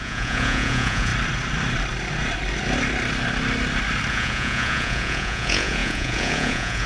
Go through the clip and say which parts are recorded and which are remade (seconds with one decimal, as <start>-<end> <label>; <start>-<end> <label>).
0.0-1.1 remade; 1.1-4.1 recorded; 4.1-6.9 remade